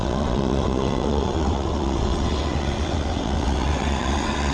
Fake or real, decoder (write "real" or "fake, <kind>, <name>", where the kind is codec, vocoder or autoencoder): fake, vocoder, WaveNeXt